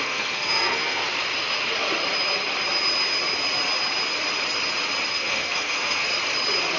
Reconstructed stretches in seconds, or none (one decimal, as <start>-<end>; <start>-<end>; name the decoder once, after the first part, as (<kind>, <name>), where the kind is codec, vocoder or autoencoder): 0.0-1.0 (codec, SNAC); 5.1-6.1